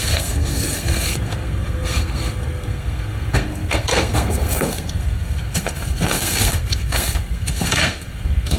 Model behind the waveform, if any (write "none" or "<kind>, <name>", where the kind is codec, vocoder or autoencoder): codec, SNAC